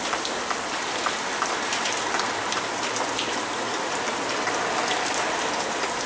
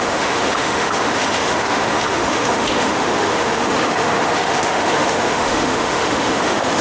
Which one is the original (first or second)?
first